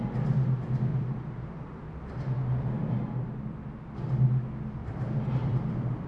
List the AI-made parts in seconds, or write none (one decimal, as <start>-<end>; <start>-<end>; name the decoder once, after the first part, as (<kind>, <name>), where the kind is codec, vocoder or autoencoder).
0.9-2.0 (vocoder, BigVGAN v2); 4.8-6.1